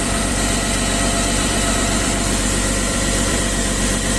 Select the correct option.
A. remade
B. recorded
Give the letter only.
A